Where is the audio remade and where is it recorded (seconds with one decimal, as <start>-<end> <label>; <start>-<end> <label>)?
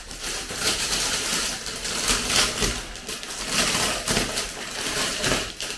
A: 0.0-1.3 remade; 1.3-4.8 recorded; 4.8-5.8 remade